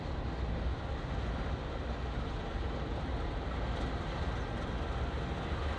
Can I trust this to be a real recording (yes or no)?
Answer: yes